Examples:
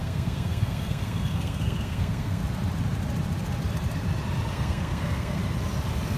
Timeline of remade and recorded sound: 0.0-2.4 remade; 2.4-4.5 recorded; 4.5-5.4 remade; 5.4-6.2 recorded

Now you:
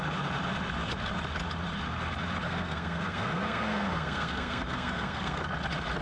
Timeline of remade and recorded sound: 0.0-2.4 recorded; 2.4-5.4 remade; 5.4-6.0 recorded